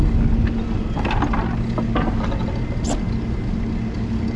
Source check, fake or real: real